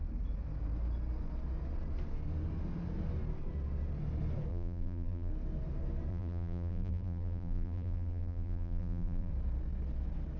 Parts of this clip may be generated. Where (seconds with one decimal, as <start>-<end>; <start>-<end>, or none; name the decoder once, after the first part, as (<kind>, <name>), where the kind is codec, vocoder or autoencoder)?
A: 4.5-5.3 (vocoder, BigVGAN v2); 6.1-9.3